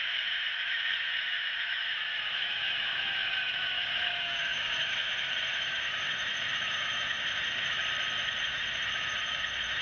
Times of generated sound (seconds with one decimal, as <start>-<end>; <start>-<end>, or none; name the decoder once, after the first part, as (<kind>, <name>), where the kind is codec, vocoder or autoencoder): 0.0-7.8 (autoencoder, DAC-VAE); 8.4-9.8